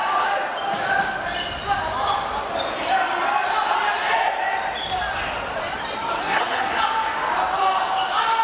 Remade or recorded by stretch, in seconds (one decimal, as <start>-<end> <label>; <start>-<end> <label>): 0.0-6.2 recorded; 6.2-6.8 remade; 6.8-8.4 recorded